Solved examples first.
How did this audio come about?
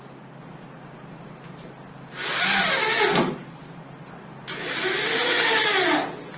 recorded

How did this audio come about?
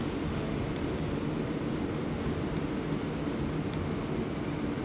recorded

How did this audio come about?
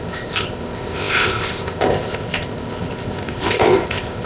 remade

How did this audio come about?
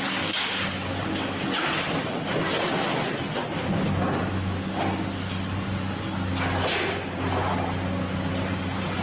recorded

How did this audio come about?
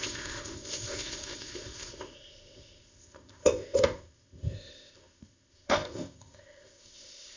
remade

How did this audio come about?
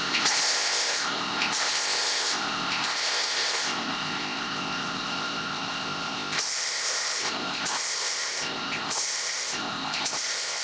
remade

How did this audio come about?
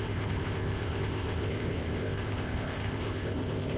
remade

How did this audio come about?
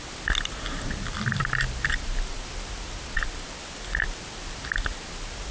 recorded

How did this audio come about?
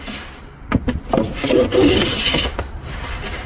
recorded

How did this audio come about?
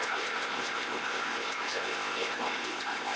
remade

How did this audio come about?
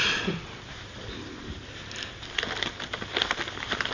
recorded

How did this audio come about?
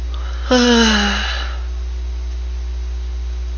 recorded